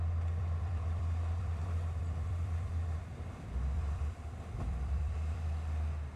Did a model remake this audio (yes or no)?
yes